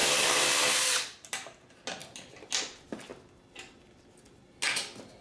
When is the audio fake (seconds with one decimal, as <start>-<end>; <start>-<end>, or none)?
0.0-0.5; 2.0-2.5